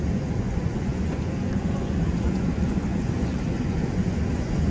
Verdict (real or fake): fake